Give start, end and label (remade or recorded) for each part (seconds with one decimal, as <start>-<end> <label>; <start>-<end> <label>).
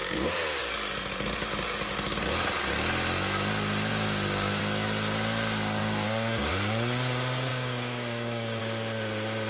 0.0-0.6 remade; 0.6-3.9 recorded; 3.9-4.6 remade; 4.6-5.8 recorded; 5.8-6.5 remade; 6.5-7.5 recorded; 7.5-8.6 remade; 8.6-9.5 recorded